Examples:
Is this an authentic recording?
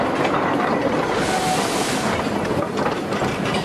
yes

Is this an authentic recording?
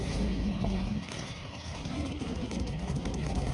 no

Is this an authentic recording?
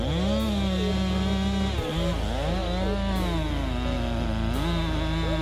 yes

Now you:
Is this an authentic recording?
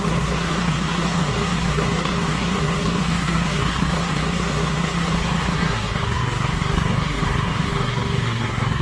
no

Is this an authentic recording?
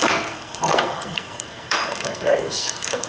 no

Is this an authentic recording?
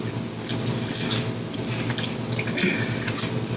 yes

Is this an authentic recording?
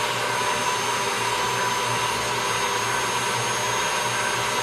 yes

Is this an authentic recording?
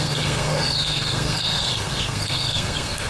no